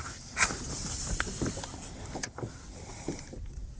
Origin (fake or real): real